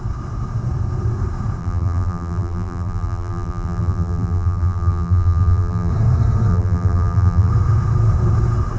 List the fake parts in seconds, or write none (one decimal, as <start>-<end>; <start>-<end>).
1.6-5.9; 6.5-7.5

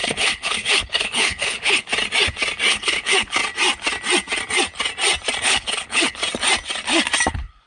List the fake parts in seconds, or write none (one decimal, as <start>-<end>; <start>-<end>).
0.0-1.9; 2.7-3.4; 5.4-6.2; 7.3-7.7

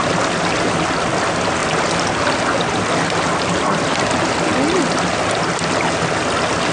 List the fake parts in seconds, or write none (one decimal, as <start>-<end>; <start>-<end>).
none